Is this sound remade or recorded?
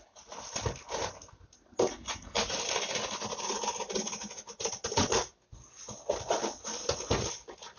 recorded